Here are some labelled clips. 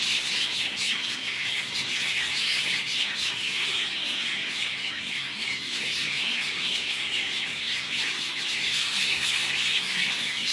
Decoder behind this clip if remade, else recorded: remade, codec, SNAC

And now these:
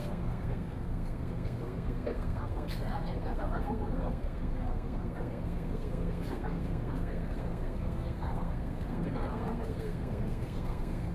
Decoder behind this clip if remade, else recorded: remade, codec, SNAC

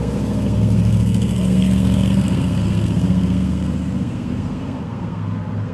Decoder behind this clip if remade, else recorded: remade, codec, SNAC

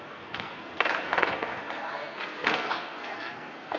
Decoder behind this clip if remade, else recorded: remade, codec, SNAC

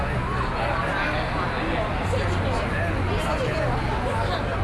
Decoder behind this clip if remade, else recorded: recorded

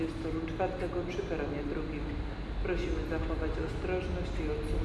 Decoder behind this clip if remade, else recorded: recorded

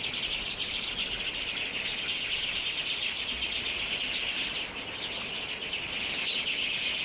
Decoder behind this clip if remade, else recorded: recorded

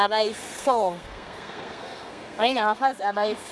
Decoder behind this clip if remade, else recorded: remade, codec, SNAC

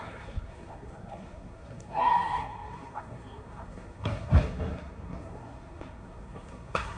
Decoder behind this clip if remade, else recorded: remade, codec, SNAC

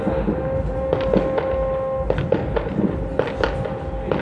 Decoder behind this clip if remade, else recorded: recorded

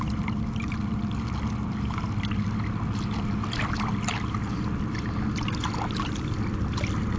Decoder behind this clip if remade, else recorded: recorded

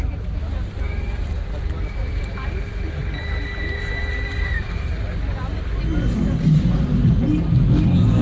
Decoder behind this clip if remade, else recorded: recorded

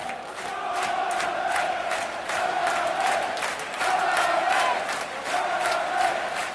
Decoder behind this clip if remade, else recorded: recorded